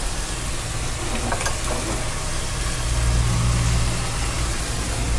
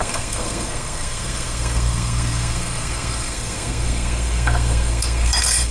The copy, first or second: second